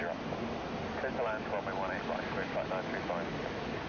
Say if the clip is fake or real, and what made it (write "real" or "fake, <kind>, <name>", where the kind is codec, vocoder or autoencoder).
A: real